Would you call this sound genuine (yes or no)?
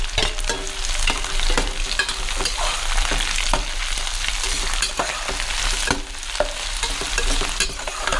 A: yes